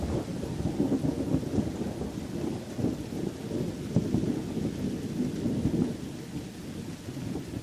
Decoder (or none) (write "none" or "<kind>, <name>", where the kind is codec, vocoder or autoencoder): none